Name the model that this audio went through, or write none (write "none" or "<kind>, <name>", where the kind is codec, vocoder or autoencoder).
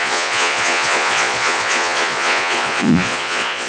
vocoder, Vocos